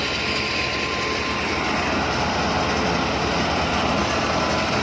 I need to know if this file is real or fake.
real